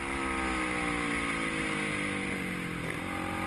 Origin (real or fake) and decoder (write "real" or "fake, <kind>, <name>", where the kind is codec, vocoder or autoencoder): real